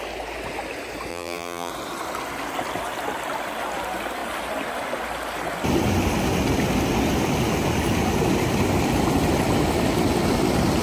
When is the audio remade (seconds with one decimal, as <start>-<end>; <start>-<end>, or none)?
1.1-1.7